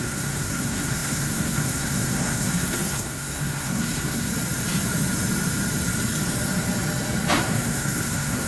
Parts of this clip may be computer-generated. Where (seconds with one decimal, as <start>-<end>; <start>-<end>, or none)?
0.0-4.3; 7.4-8.5